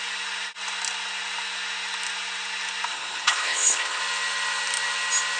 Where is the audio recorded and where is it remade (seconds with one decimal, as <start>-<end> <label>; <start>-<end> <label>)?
0.0-2.9 recorded; 2.9-4.0 remade; 4.0-5.4 recorded